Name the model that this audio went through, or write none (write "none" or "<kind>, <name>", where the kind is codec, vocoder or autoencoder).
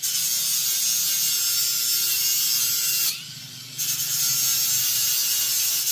none